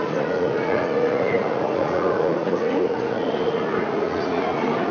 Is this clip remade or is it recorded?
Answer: remade